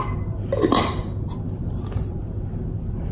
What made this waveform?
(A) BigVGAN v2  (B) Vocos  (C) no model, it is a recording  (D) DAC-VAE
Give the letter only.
A